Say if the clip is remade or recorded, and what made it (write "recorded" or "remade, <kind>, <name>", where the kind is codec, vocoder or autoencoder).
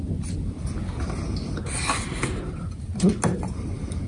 recorded